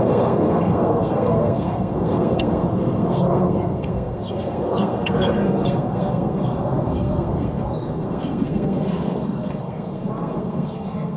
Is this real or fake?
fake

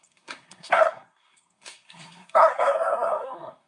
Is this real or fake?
fake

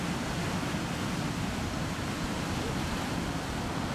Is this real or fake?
real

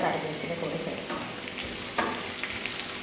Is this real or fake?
real